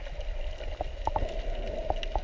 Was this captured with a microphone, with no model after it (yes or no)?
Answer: yes